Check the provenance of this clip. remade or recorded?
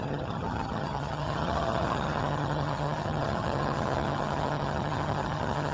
remade